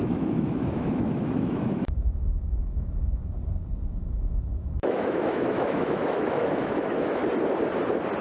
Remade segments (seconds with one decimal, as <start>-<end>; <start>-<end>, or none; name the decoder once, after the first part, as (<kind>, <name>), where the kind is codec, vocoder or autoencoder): 0.0-3.2 (autoencoder, DAC-VAE); 3.9-7.2